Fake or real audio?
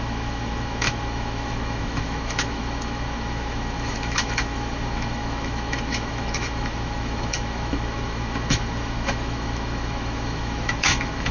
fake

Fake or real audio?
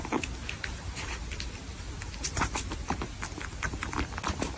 real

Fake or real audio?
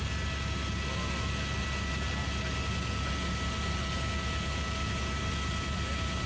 real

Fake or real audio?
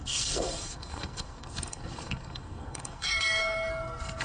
fake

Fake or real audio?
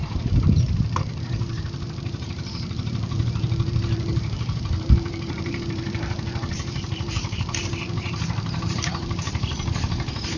fake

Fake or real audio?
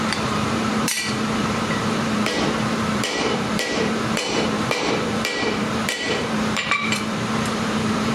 fake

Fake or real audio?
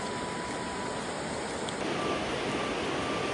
real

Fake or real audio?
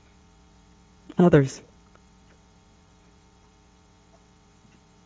fake